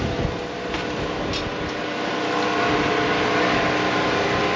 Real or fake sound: real